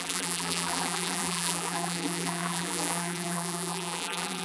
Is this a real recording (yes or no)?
no